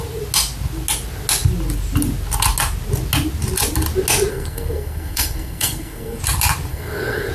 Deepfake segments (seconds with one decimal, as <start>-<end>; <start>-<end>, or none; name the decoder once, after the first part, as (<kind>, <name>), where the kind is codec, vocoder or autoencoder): 4.3-6.2 (codec, SNAC); 6.7-7.3